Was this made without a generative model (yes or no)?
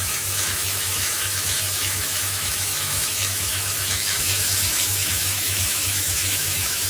no